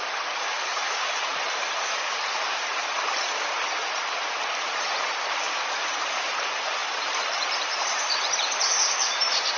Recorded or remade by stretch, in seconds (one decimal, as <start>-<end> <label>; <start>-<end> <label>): 0.0-2.8 remade; 2.8-4.6 recorded; 4.6-9.6 remade